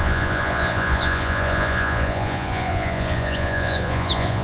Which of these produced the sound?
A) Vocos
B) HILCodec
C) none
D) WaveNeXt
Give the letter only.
A